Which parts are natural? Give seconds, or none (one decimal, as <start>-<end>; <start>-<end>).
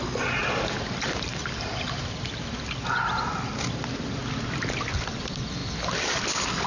0.0-6.7